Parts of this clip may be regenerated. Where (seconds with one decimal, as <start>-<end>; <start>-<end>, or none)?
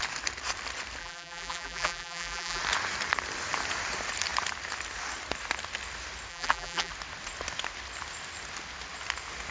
1.0-2.6; 6.3-6.9